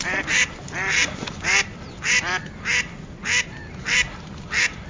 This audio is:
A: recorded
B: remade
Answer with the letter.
A